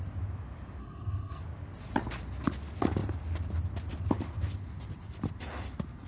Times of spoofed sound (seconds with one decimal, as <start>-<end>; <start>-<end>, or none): 0.8-1.4